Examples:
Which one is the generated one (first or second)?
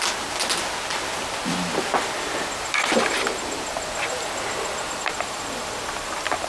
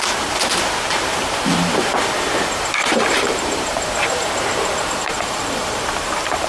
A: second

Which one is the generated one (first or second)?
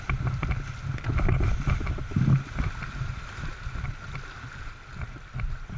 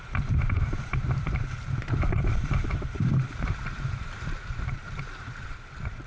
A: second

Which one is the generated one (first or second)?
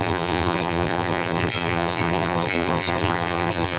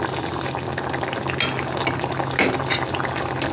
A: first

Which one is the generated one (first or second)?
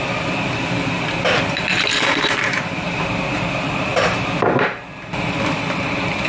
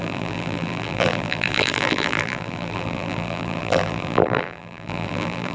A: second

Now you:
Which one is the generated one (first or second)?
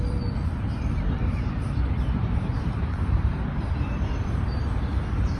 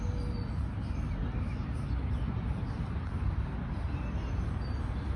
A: first